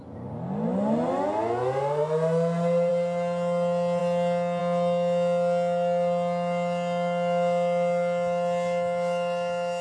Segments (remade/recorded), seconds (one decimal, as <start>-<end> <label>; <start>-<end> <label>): 0.0-9.8 recorded